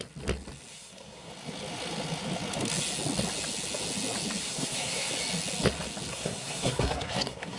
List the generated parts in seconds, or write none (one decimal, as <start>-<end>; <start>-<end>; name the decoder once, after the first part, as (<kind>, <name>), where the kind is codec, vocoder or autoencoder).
0.7-1.3 (codec, SNAC); 4.4-5.1; 6.1-7.6